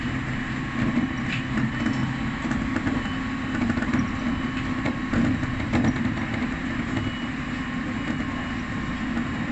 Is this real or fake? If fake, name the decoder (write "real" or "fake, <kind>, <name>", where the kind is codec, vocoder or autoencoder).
real